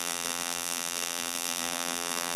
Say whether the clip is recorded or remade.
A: remade